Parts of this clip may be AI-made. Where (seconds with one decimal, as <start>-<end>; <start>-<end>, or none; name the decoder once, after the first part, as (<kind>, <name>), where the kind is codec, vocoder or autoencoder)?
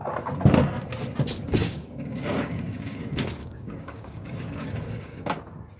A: 1.6-3.0 (codec, DAC); 3.4-5.3